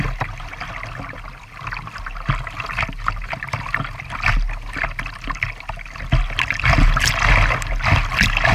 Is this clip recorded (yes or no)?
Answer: yes